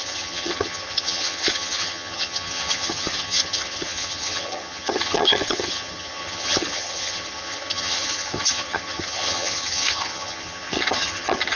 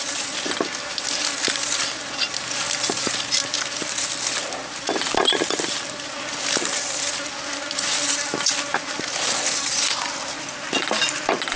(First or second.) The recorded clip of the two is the second